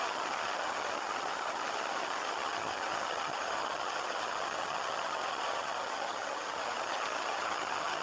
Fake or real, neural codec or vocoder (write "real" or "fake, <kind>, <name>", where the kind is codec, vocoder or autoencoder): fake, vocoder, HiFi-GAN